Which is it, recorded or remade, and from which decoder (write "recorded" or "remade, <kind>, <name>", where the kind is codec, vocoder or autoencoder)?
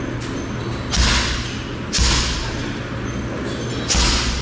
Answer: recorded